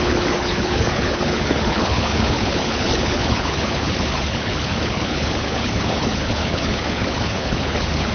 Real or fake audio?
fake